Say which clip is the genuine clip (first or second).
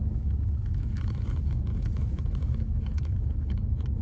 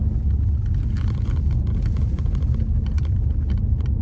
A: second